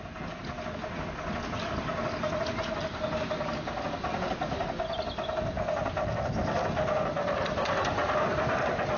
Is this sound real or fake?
real